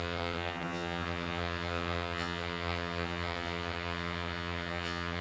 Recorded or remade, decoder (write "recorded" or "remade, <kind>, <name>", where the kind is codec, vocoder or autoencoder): remade, vocoder, HiFi-GAN